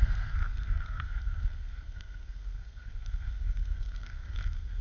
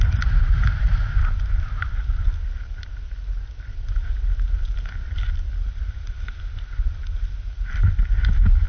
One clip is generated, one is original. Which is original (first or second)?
second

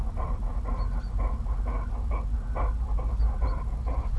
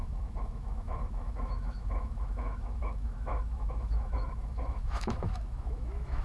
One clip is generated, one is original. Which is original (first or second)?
first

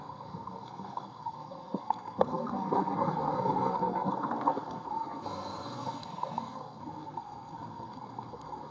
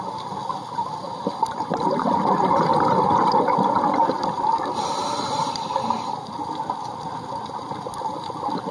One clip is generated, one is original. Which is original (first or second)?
second